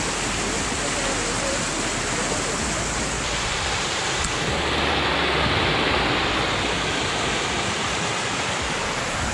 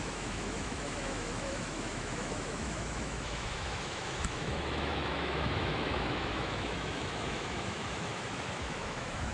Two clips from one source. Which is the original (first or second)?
first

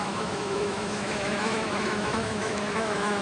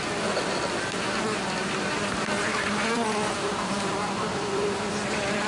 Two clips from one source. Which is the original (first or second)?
second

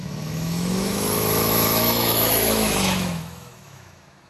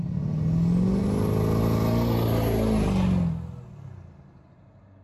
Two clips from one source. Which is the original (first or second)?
second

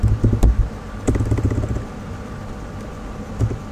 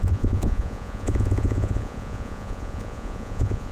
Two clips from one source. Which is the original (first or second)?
first